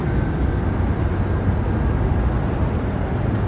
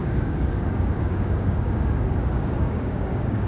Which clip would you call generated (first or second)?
second